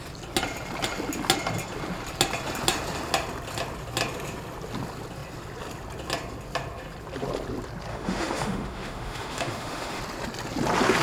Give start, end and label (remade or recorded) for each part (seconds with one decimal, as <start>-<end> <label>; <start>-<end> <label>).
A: 0.0-7.9 recorded; 7.9-10.0 remade; 10.0-11.0 recorded